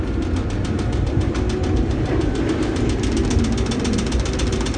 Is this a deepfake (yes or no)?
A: no